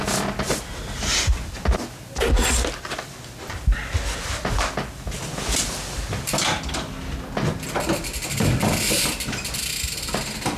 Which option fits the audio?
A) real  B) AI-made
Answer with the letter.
A